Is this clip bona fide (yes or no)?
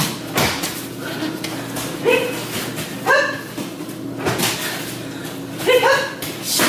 yes